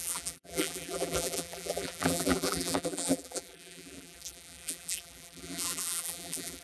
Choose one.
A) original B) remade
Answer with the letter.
B